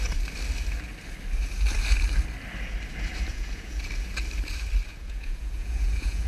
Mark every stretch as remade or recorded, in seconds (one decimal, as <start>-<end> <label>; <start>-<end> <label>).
0.0-3.3 recorded; 3.3-3.9 remade; 3.9-4.9 recorded; 4.9-6.3 remade